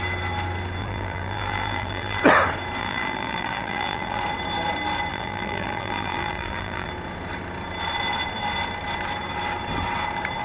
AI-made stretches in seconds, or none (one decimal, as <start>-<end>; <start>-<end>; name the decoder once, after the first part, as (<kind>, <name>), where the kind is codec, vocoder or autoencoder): 0.8-2.2 (vocoder, BigVGAN v2); 2.8-4.2; 5.1-6.9